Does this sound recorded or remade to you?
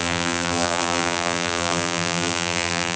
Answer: remade